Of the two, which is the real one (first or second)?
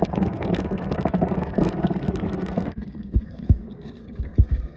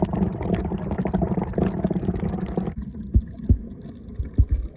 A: second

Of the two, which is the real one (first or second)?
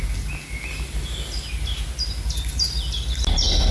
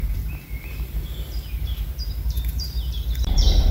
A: first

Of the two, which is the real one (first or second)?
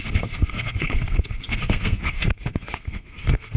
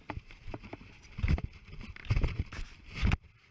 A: second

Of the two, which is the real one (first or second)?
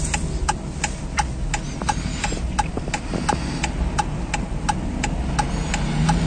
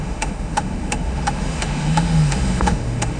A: first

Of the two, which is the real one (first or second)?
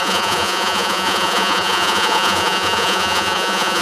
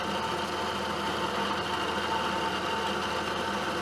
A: second